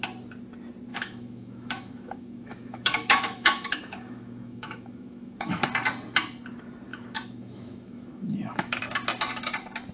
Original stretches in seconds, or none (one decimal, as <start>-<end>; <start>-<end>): 0.0-0.9; 5.6-6.9; 8.8-9.9